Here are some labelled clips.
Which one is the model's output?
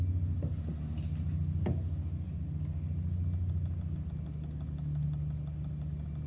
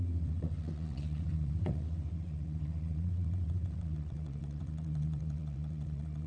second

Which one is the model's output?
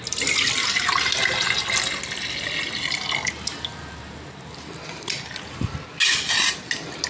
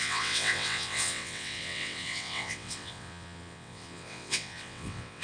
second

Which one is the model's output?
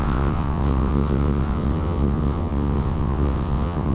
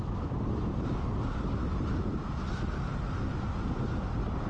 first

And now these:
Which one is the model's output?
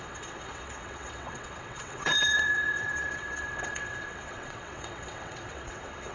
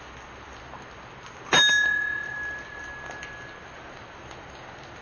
first